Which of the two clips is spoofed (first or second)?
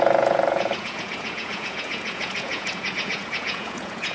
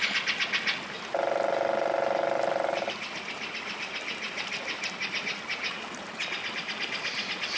first